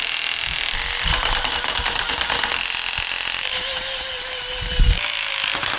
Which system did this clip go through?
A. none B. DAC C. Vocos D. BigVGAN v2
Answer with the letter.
A